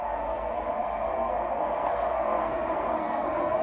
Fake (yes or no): yes